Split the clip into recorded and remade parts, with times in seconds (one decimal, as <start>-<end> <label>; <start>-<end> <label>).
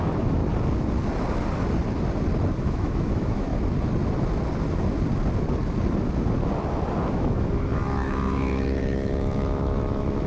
0.0-0.4 remade; 0.4-2.6 recorded; 2.6-3.5 remade; 3.5-7.1 recorded; 7.1-10.3 remade